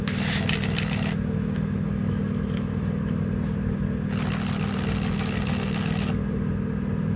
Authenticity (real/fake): real